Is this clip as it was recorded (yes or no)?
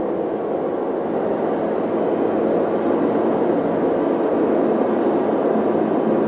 yes